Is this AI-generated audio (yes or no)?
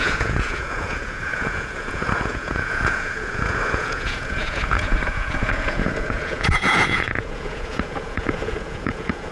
yes